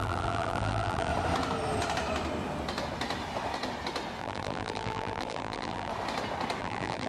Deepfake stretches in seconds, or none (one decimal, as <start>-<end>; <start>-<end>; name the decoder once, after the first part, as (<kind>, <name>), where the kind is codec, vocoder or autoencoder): 0.0-1.1 (vocoder, BigVGAN v2); 4.2-5.9; 6.6-7.1